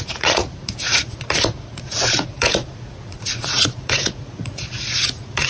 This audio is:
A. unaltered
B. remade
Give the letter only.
B